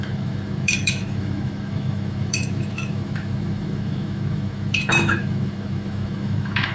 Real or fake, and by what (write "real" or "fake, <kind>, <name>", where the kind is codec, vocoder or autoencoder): fake, autoencoder, DAC-VAE